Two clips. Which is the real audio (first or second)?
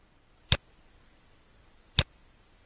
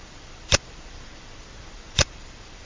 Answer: first